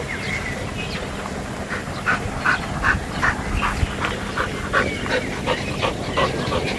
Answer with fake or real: real